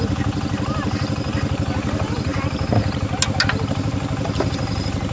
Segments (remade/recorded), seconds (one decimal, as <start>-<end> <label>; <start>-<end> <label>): 0.0-2.3 remade; 2.3-3.7 recorded; 3.7-5.1 remade